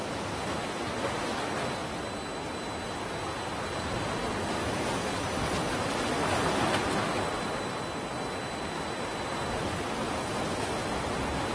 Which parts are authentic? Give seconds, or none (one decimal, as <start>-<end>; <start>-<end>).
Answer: 0.0-11.5